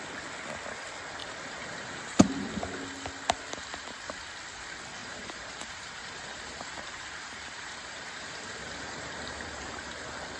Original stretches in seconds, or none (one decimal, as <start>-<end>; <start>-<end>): 0.0-1.2; 2.0-5.0; 10.0-10.4